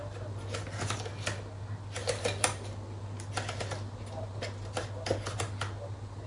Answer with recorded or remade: recorded